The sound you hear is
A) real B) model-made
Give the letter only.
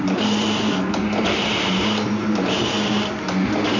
A